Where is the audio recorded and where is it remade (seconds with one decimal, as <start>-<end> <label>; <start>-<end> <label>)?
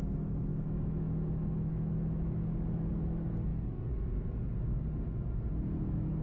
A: 0.0-0.5 recorded; 0.5-2.9 remade; 2.9-6.2 recorded